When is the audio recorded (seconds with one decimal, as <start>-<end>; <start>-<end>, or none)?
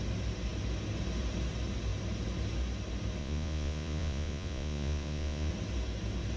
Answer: 0.0-3.2; 5.5-6.4